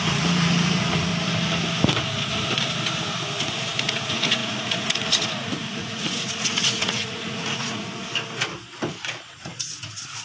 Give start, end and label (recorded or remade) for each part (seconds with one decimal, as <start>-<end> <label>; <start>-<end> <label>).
0.0-1.1 remade; 1.1-3.8 recorded; 3.8-8.1 remade; 8.1-9.3 recorded; 9.3-10.2 remade